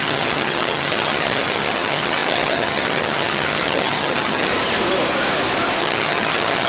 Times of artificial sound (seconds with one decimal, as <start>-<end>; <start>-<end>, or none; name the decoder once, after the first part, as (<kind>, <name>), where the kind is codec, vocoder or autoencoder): 0.0-4.5 (vocoder, HiFi-GAN); 5.8-6.7